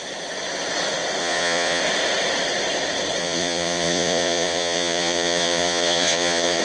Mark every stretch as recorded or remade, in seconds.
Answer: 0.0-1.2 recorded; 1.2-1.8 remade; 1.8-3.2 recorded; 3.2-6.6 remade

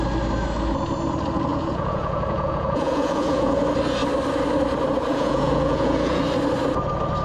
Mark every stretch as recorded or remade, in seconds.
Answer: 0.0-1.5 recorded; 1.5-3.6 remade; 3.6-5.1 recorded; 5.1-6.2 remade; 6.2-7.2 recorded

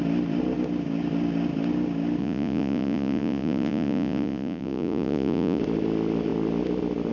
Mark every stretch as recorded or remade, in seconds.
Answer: 0.0-2.2 recorded; 2.2-5.6 remade; 5.6-7.1 recorded

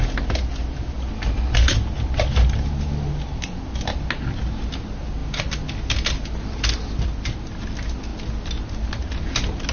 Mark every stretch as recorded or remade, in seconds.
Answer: 0.0-9.7 recorded